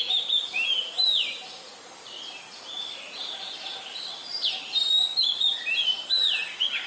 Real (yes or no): yes